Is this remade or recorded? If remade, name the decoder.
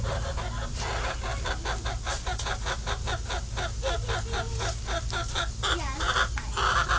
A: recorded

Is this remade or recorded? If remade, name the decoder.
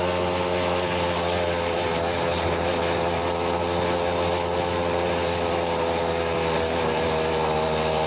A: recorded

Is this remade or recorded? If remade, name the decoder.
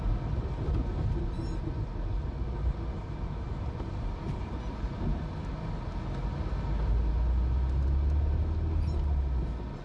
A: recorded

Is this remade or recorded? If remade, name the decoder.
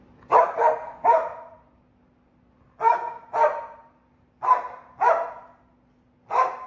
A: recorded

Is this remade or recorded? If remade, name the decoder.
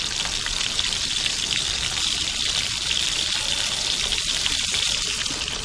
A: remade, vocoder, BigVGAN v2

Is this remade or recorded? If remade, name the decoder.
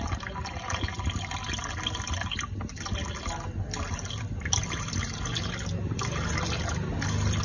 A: recorded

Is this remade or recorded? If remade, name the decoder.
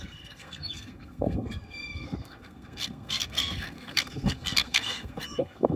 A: remade, codec, SNAC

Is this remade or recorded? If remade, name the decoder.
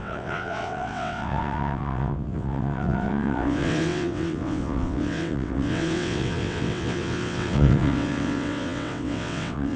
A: remade, vocoder, WaveNeXt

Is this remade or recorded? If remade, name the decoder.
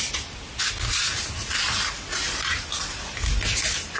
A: recorded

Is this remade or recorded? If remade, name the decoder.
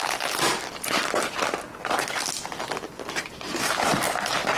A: recorded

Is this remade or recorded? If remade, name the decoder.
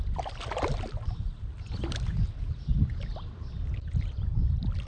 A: recorded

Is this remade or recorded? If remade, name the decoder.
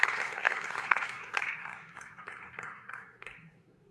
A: remade, codec, SNAC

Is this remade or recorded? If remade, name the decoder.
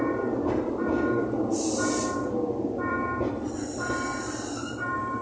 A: remade, vocoder, BigVGAN v2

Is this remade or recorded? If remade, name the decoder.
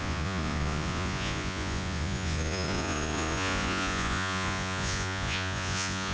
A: remade, vocoder, Vocos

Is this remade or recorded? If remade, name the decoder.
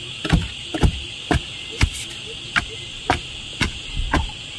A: recorded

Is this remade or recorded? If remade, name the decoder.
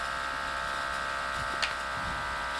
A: recorded